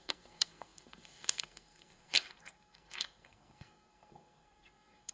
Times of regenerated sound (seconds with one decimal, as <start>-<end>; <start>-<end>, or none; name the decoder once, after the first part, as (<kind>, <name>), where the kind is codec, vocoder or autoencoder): 0.0-5.1 (codec, SNAC)